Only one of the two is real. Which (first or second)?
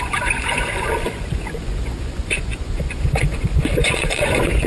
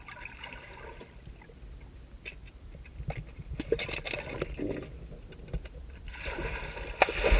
second